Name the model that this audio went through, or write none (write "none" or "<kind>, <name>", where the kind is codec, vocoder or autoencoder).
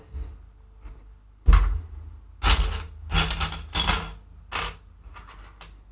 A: none